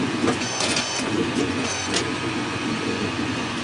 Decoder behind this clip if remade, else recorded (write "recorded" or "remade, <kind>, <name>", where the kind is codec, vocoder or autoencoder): remade, vocoder, Vocos